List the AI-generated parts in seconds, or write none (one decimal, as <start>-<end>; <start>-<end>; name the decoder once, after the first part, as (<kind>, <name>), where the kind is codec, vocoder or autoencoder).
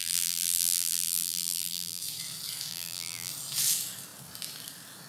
0.0-2.0 (vocoder, BigVGAN v2); 2.7-3.3